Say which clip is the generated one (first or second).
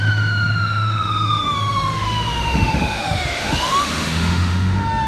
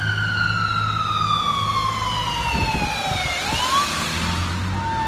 first